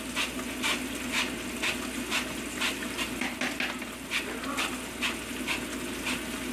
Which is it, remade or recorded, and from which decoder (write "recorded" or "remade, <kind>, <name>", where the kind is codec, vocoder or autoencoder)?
recorded